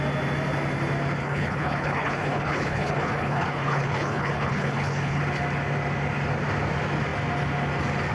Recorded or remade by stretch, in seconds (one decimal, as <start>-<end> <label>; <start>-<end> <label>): 0.0-1.2 recorded; 1.2-5.2 remade; 5.2-8.1 recorded